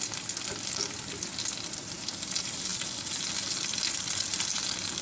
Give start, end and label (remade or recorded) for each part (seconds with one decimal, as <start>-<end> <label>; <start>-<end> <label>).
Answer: 0.0-5.0 recorded